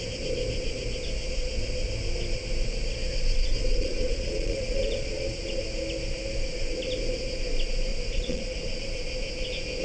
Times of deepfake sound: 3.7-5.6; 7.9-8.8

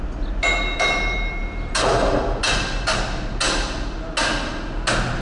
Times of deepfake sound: none

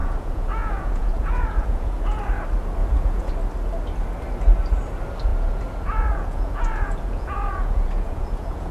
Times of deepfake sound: 0.0-2.2; 2.8-3.3; 5.3-8.7

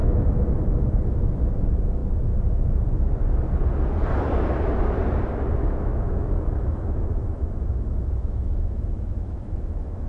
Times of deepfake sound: 0.0-0.9; 5.6-10.1

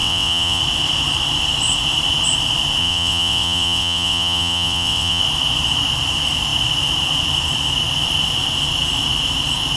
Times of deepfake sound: 0.0-0.6; 2.8-5.2

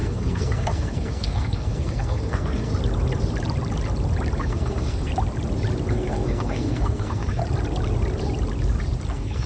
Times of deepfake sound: 0.0-2.7; 4.4-5.1; 5.9-7.4; 9.1-9.5

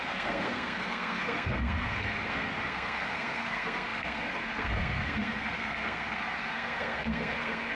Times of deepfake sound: 0.0-7.7

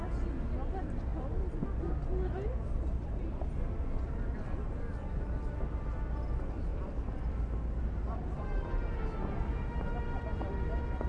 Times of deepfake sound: none